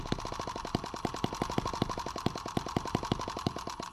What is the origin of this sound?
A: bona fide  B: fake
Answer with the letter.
A